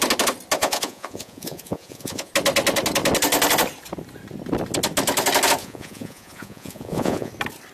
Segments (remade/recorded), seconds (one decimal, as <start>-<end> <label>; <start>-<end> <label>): 0.0-0.6 recorded; 0.6-2.3 remade; 2.3-5.6 recorded; 5.6-7.3 remade; 7.3-7.7 recorded